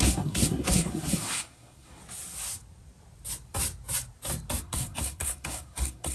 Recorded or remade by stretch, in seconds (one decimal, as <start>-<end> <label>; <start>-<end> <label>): 0.0-2.0 remade; 2.0-4.6 recorded; 4.6-6.1 remade